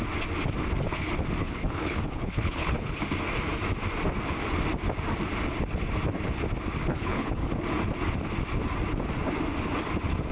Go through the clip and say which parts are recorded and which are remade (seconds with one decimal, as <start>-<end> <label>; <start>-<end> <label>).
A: 0.0-1.4 recorded; 1.4-2.9 remade; 2.9-6.9 recorded; 6.9-7.5 remade; 7.5-10.3 recorded